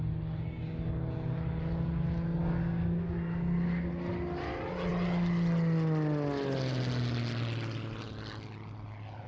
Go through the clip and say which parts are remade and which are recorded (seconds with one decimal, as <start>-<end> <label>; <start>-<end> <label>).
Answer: 0.0-9.3 recorded